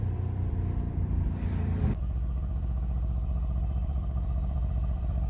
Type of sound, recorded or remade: remade